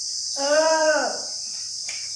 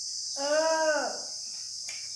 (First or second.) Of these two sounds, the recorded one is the second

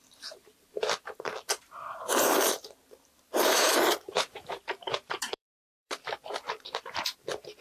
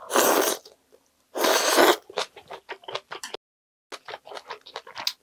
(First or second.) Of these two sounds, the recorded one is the second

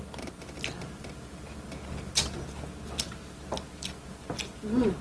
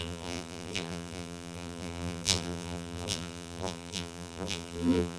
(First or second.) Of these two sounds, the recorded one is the first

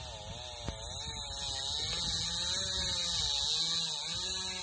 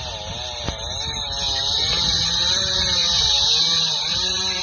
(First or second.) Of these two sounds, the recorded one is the first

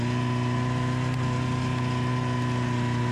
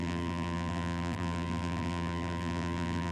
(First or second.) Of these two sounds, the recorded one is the first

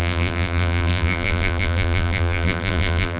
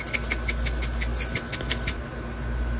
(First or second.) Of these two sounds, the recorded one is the second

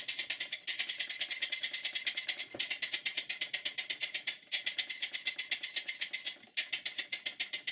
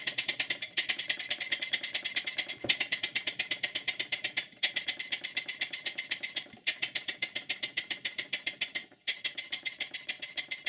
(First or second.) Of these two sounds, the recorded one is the first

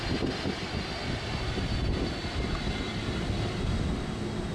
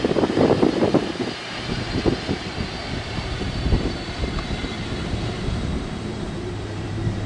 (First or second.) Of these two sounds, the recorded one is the first